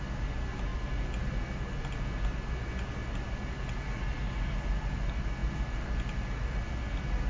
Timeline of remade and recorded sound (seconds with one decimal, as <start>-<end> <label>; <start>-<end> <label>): 0.0-7.3 recorded